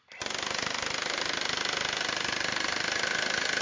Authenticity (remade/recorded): recorded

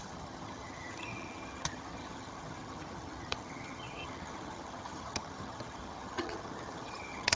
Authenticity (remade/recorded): remade